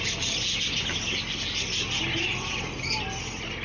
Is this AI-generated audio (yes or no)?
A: no